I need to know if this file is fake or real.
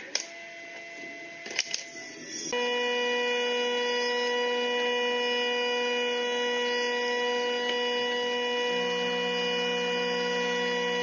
real